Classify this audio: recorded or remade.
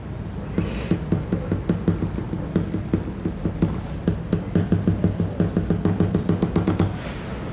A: recorded